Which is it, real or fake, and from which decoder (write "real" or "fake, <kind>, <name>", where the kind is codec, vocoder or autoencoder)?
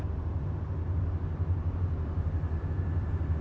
real